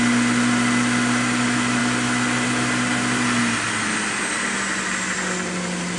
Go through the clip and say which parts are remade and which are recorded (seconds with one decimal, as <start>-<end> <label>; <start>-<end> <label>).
0.0-6.0 recorded